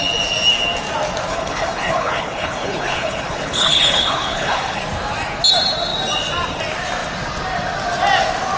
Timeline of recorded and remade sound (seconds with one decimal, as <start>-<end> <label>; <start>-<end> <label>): 0.0-1.3 recorded; 1.3-4.8 remade; 4.8-8.6 recorded